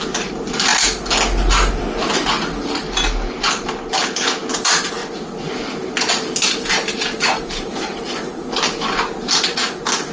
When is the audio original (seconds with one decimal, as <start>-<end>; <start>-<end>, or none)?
0.0-10.1